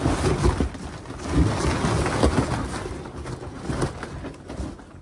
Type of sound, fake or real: real